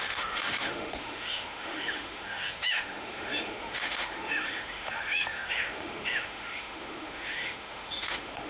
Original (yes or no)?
no